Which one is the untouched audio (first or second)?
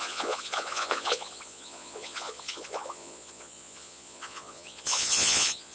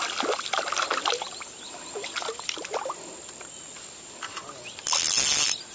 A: second